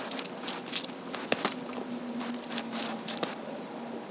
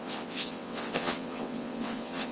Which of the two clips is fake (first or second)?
second